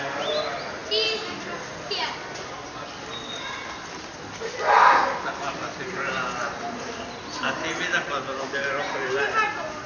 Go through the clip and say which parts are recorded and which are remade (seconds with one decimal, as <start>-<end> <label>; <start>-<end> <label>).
0.0-9.9 recorded